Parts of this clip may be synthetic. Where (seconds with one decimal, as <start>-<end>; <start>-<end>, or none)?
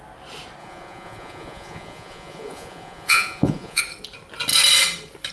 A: 0.6-3.8